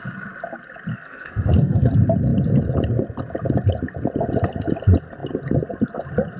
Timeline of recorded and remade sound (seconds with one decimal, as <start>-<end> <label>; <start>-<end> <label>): 0.0-0.9 recorded; 0.9-1.9 remade; 1.9-6.4 recorded